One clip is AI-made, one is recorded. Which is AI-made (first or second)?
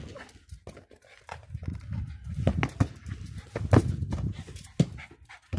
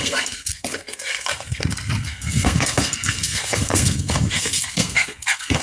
second